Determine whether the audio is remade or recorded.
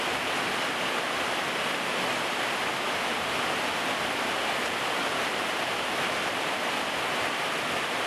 recorded